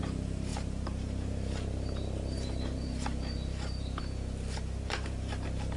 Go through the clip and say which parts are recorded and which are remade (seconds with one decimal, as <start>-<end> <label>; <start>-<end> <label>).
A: 0.0-5.8 remade